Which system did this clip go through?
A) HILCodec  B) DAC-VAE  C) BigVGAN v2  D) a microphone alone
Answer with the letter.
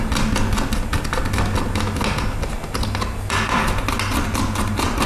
D